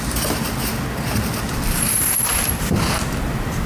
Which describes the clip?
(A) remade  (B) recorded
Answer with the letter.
B